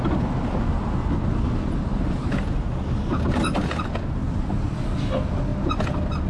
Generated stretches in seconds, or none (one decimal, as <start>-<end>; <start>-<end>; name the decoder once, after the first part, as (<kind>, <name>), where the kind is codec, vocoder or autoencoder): none